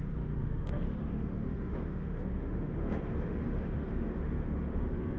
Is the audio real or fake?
fake